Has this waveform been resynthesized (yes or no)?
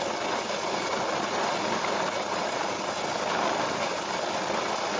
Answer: no